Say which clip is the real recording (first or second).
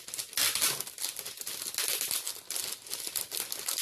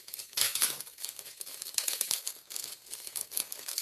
first